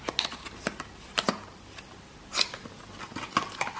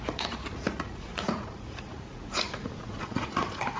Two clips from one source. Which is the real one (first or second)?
first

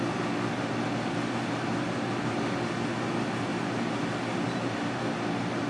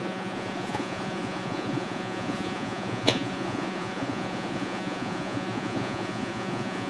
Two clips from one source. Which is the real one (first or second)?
first